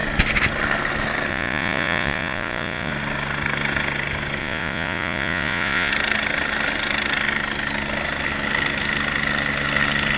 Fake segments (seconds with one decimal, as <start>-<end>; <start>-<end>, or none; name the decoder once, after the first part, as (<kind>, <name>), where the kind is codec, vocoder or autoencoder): 1.3-2.9 (vocoder, Vocos); 4.4-5.9